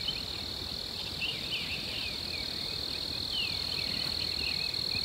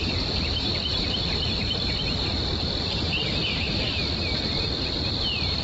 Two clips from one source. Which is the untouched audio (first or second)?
first